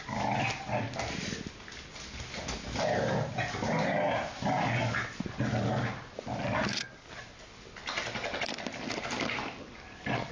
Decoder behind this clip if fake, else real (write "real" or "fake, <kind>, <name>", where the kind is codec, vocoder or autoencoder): real